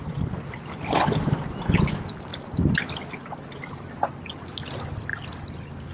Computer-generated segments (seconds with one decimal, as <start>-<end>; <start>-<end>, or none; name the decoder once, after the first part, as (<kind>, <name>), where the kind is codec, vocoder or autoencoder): none